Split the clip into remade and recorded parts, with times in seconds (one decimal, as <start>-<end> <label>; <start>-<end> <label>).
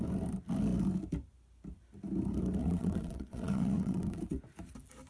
0.0-2.6 recorded; 2.6-4.4 remade; 4.4-5.1 recorded